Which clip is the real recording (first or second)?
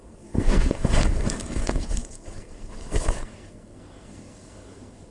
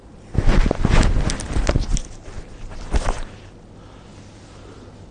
second